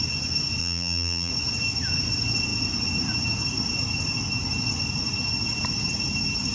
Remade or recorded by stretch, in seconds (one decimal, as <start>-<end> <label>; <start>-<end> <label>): 0.0-0.6 recorded; 0.6-1.3 remade; 1.3-6.5 recorded